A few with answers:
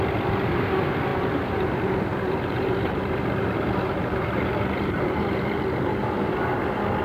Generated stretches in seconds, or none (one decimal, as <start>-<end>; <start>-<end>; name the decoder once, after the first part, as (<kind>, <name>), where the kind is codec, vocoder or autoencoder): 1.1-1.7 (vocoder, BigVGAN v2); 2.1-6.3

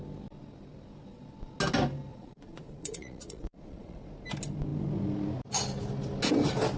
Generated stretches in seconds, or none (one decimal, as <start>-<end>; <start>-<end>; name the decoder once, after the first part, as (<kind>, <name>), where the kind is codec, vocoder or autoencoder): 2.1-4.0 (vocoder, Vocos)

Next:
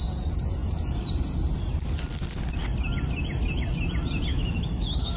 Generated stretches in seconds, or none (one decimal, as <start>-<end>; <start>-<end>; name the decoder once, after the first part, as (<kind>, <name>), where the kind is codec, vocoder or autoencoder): 4.3-5.2 (autoencoder, DAC-VAE)

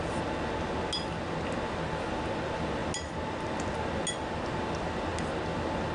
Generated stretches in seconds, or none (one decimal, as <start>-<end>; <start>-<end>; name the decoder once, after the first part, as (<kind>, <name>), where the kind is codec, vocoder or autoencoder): none

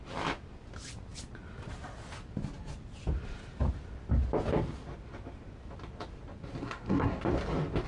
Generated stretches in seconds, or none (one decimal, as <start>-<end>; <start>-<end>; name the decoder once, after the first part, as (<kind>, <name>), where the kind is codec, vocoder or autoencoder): 6.6-7.2 (codec, SNAC)

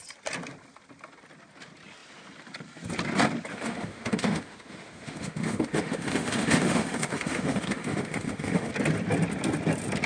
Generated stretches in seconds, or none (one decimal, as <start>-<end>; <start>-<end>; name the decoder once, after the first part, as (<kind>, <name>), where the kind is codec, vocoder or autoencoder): 3.5-8.7 (autoencoder, DAC-VAE)